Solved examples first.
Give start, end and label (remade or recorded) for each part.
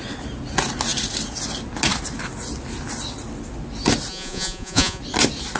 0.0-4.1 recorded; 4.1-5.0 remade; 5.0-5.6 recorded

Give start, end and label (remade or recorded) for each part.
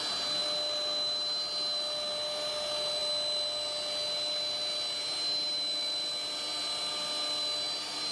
0.0-8.1 recorded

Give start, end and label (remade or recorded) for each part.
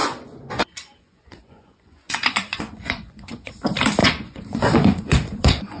0.0-3.5 remade; 3.5-4.0 recorded; 4.0-5.8 remade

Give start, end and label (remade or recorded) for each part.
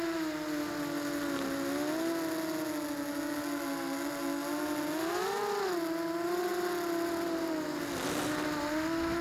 0.0-9.2 recorded